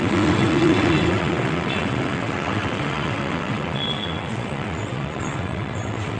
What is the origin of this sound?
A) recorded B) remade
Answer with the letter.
B